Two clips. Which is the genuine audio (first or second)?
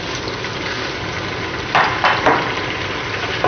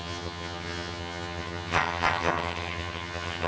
first